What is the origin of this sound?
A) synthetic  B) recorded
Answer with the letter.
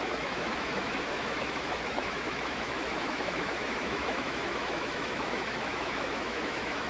A